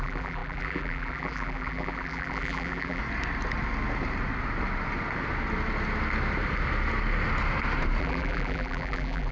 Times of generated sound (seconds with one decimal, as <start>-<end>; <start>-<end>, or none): 0.0-3.0; 8.0-9.3